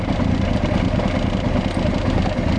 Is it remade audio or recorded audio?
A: recorded